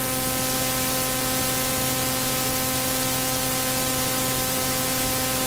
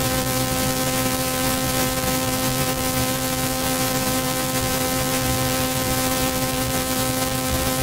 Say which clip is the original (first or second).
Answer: first